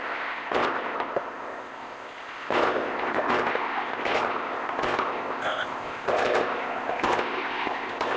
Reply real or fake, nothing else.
fake